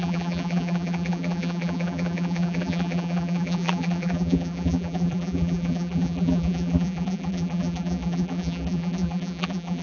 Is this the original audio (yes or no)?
no